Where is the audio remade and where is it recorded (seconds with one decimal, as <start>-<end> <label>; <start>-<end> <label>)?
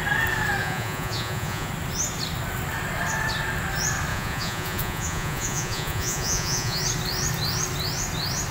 0.0-0.6 recorded; 0.6-1.7 remade; 1.7-4.1 recorded; 4.1-6.8 remade; 6.8-8.5 recorded